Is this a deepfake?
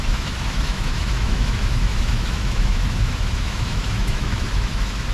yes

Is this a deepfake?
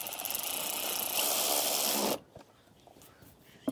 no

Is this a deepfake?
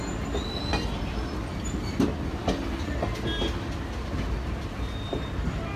no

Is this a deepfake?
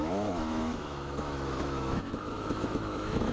yes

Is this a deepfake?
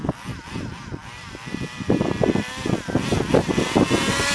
no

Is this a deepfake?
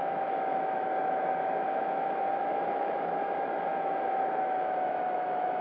yes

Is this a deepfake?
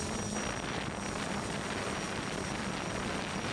no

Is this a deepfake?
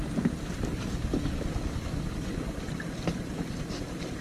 no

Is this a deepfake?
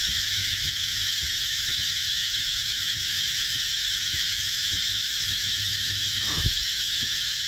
yes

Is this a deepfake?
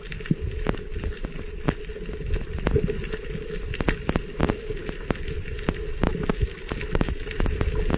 no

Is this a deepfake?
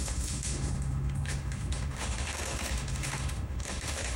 yes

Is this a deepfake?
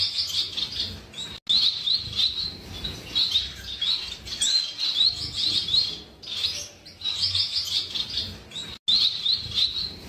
no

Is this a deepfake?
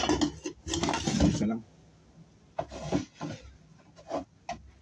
no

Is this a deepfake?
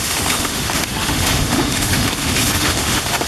yes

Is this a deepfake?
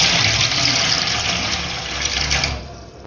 no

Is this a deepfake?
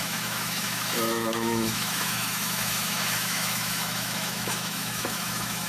yes